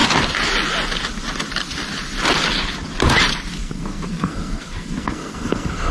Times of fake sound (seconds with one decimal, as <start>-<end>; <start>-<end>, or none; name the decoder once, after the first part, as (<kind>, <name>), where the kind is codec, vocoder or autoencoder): 3.6-5.9 (codec, SNAC)